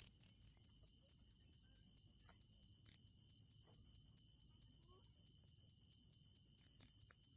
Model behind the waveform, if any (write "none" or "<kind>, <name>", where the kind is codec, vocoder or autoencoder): none